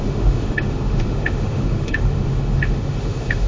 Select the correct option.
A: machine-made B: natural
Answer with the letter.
A